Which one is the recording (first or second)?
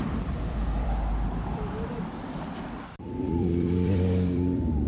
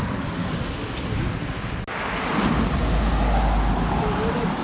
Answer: second